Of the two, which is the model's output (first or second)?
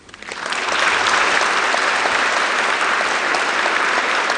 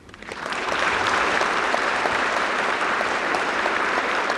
second